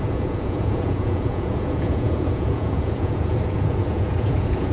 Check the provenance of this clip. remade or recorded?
remade